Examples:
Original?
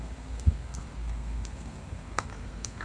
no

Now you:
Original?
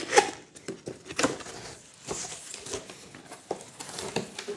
yes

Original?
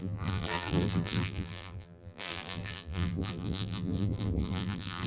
no